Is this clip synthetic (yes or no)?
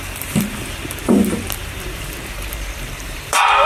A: yes